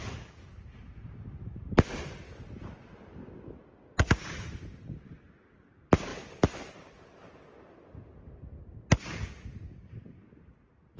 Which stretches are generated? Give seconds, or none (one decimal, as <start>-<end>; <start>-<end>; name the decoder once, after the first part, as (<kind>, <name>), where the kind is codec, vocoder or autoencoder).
6.1-6.7 (vocoder, BigVGAN v2)